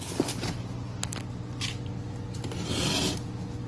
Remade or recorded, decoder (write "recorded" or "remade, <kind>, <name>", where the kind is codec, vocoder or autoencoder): recorded